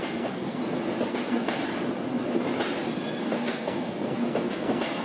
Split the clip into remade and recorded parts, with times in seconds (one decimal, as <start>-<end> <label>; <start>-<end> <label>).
0.0-0.6 remade; 0.6-1.1 recorded; 1.1-1.6 remade; 1.6-3.2 recorded; 3.2-5.0 remade